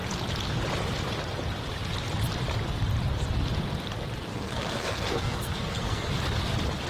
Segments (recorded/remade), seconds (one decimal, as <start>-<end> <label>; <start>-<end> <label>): 0.0-4.3 recorded; 4.3-6.1 remade; 6.1-6.9 recorded